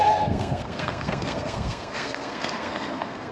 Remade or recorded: remade